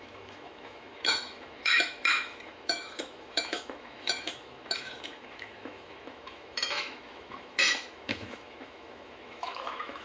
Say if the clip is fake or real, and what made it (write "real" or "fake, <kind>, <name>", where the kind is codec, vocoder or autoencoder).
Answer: fake, autoencoder, DAC-VAE